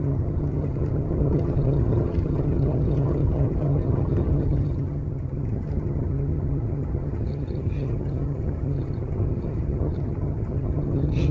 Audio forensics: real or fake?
fake